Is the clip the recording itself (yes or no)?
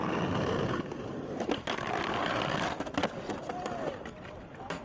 yes